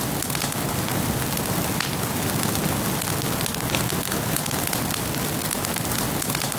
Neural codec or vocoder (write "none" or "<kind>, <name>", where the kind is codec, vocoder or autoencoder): none